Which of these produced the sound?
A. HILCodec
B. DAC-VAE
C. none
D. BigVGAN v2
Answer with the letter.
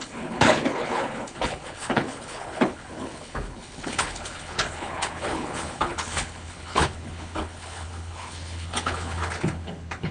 A